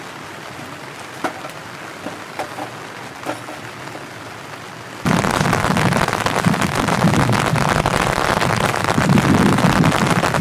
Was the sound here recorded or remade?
recorded